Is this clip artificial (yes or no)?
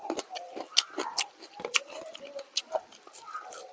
no